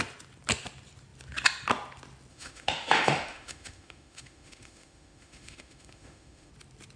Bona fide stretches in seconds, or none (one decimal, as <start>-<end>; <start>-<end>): 0.0-2.3; 6.5-7.0